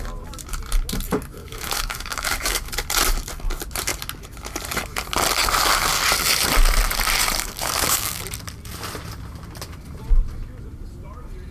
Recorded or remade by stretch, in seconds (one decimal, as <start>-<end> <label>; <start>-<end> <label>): 0.0-1.4 recorded; 1.4-2.7 remade; 2.7-7.4 recorded; 7.4-8.2 remade; 8.2-11.5 recorded